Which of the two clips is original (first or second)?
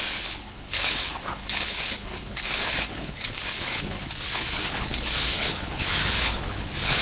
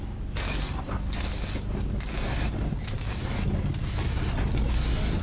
second